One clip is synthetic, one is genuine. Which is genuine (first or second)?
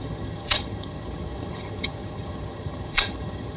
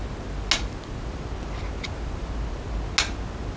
second